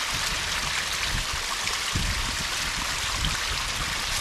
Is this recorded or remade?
recorded